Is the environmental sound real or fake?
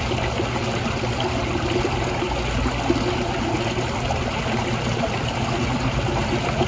real